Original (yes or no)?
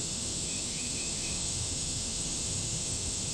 no